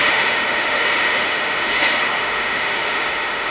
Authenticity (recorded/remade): remade